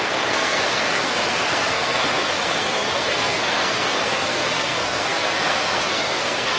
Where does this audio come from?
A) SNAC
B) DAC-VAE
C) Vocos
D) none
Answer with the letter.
A